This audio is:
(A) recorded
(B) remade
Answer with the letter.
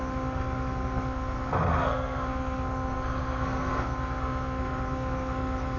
B